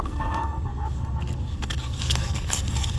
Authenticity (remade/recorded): remade